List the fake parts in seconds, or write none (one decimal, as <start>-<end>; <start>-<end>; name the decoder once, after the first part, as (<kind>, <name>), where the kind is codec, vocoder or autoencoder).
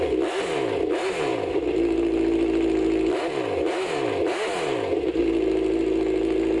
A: none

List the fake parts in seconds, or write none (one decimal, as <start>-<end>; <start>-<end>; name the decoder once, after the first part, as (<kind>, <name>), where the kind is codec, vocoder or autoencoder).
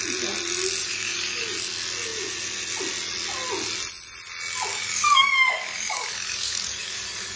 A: 0.8-1.4 (codec, DAC); 4.7-7.4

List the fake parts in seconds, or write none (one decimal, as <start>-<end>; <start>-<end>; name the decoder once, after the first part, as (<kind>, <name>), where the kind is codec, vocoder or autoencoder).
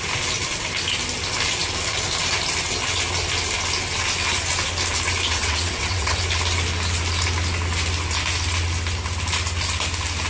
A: 5.3-6.2 (vocoder, WaveNeXt)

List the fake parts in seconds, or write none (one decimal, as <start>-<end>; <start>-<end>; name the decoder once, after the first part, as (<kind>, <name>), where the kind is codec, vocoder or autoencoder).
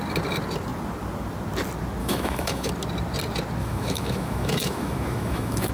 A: 2.0-2.7 (autoencoder, DAC-VAE); 3.6-5.7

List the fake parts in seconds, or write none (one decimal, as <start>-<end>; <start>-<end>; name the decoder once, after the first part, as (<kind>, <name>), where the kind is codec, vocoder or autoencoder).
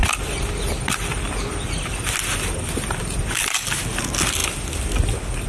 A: 0.0-3.3 (vocoder, BigVGAN v2)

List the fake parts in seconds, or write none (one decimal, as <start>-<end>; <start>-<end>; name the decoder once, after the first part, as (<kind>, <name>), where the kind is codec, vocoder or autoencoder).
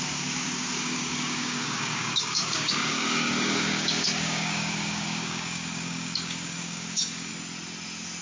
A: 0.0-7.3 (codec, DAC)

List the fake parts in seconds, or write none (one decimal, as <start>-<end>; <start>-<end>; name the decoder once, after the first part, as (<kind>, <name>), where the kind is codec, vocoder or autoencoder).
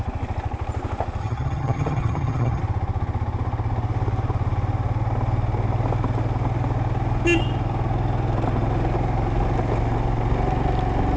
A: 1.2-2.6 (vocoder, HiFi-GAN)